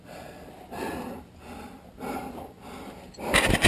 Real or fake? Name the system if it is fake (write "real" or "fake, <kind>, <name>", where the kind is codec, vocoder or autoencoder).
real